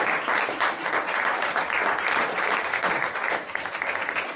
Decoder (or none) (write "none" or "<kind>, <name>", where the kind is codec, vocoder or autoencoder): none